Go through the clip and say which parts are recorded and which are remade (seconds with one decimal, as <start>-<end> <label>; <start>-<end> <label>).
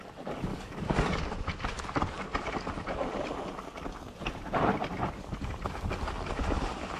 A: 0.0-0.5 recorded; 0.5-1.2 remade; 1.2-7.0 recorded